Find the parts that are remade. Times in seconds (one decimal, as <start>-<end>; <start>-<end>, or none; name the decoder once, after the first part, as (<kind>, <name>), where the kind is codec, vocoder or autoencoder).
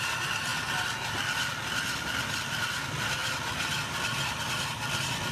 none